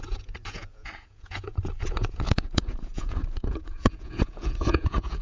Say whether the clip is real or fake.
fake